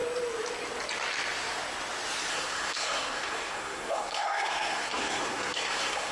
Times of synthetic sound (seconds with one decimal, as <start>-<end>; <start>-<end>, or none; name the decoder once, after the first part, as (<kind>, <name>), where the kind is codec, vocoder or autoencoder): 2.3-6.1 (codec, SNAC)

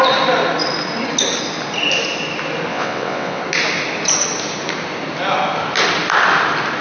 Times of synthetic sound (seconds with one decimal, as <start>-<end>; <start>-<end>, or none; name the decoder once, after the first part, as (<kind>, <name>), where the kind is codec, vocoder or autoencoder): 2.7-3.4 (vocoder, WaveNeXt)

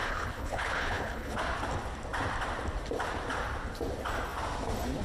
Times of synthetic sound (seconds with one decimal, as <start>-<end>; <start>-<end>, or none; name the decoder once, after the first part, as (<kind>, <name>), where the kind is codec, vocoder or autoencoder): 0.0-1.4 (codec, HILCodec)

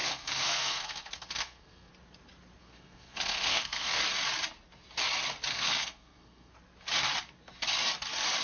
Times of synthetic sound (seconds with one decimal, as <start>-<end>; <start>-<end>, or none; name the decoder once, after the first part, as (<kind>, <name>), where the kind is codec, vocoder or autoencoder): 0.0-1.9 (codec, SNAC); 2.6-4.0; 5.5-6.5